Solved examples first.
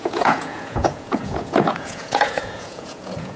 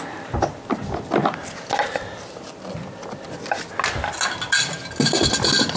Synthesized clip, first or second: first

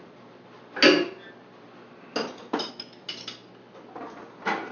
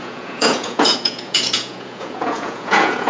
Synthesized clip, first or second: second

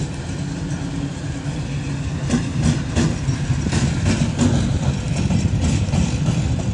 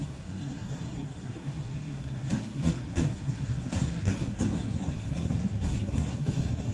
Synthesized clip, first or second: second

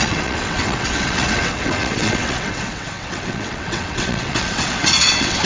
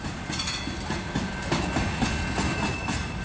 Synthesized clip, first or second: first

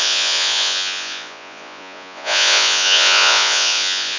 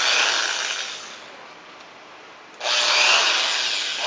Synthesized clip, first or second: first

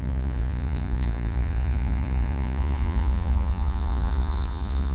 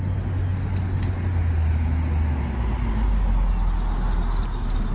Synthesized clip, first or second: first